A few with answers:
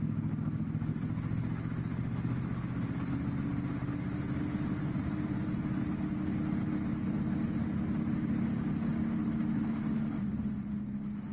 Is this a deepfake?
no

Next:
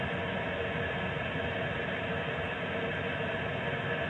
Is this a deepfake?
no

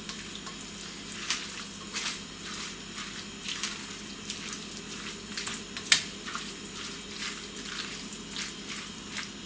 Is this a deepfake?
no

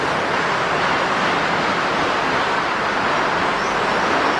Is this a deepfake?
no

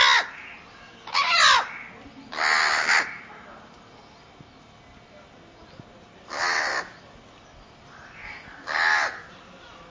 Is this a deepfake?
no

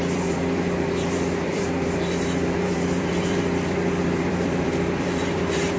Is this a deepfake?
yes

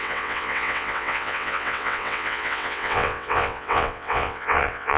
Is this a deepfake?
yes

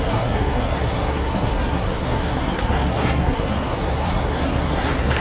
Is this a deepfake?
yes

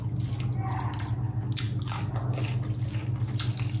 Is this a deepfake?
no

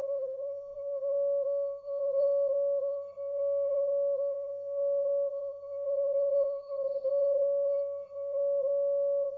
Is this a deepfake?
yes